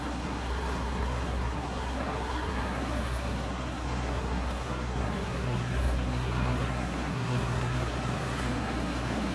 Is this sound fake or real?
fake